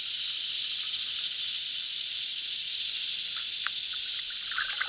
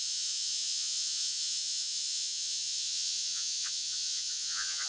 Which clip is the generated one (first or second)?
second